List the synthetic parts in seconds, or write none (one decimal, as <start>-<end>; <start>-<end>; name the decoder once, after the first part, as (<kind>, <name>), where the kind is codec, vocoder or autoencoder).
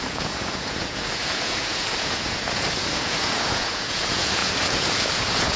0.0-5.6 (vocoder, Vocos)